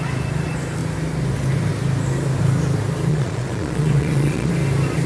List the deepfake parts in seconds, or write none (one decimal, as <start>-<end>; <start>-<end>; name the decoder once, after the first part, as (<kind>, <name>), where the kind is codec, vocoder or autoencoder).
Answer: 3.1-4.5 (vocoder, Vocos)

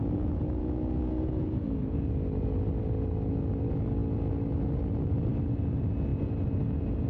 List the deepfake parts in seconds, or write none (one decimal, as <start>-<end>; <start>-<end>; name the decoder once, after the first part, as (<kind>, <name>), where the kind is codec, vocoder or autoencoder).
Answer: 0.0-2.1 (vocoder, Vocos)

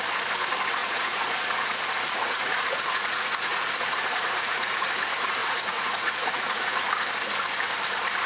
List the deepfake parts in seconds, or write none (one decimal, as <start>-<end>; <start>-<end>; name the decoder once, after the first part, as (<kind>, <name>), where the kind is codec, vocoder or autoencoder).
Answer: 0.8-4.9 (vocoder, Vocos); 5.4-6.8

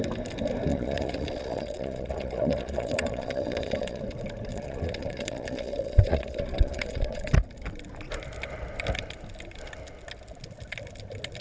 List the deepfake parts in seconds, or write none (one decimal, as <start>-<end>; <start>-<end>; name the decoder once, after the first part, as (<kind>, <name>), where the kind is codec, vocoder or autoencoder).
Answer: 0.7-4.0 (vocoder, Vocos); 4.5-7.3

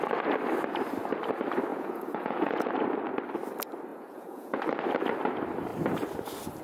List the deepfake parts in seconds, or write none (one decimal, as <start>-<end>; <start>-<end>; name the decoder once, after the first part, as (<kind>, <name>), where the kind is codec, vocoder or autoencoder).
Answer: 1.7-2.7 (vocoder, Vocos); 3.9-4.6

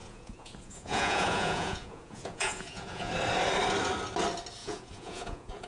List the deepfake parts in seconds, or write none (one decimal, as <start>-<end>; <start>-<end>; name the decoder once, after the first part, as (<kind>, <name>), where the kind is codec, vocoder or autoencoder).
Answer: 0.0-3.1 (vocoder, Vocos); 4.6-5.7

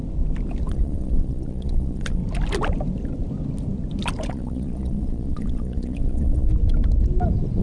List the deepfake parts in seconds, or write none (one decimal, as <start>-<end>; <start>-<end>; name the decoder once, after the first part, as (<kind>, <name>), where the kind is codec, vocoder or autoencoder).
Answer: 0.7-2.2 (vocoder, Vocos); 4.3-6.5